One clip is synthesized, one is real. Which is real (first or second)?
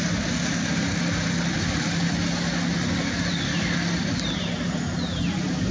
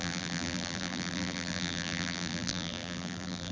first